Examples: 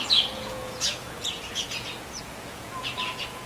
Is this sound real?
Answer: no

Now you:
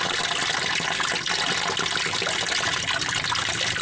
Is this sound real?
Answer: yes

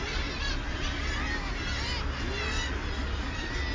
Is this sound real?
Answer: yes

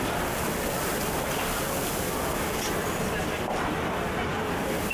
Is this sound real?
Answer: yes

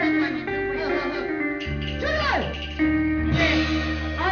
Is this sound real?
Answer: yes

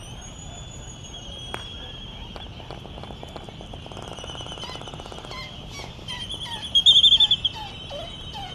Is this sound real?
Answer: yes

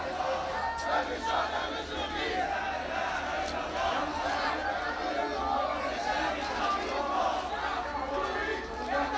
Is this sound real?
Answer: yes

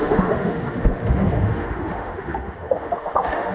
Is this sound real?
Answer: no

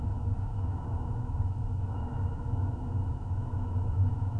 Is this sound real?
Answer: no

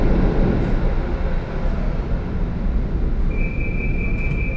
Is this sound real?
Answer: yes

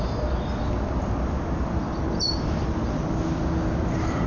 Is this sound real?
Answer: yes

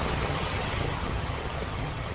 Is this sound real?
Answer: no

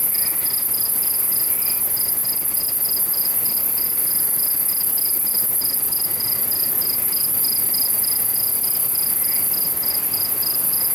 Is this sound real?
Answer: yes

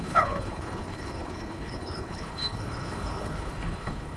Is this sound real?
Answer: no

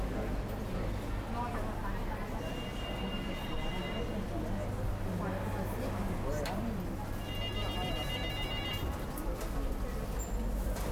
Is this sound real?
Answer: yes